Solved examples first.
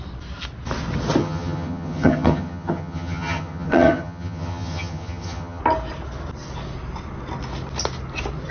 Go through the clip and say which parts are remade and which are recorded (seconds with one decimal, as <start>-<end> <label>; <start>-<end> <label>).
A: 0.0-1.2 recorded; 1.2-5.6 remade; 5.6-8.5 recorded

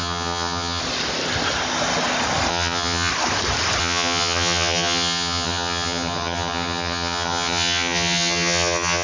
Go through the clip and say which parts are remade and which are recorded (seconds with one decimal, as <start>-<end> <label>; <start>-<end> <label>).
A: 0.0-0.8 remade; 0.8-2.5 recorded; 2.5-3.1 remade; 3.1-3.8 recorded; 3.8-9.0 remade

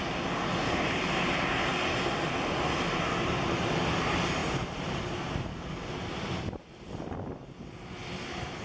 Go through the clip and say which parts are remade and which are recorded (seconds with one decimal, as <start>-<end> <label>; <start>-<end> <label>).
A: 0.0-8.6 recorded